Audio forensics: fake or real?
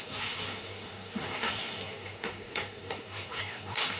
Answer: fake